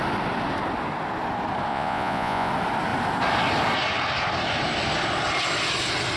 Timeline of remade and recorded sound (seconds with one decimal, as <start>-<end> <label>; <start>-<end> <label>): 0.0-1.7 recorded; 1.7-2.5 remade; 2.5-6.2 recorded